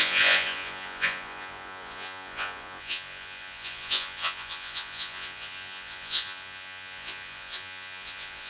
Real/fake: fake